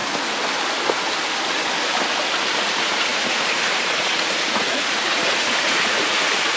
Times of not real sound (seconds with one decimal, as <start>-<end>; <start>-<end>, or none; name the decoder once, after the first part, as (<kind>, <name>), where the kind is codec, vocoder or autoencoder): 2.6-6.6 (vocoder, Vocos)